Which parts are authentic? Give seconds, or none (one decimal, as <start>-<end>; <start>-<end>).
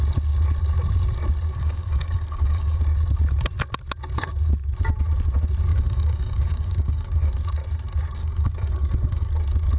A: 0.0-1.5; 2.8-5.7; 7.3-8.2; 9.3-9.8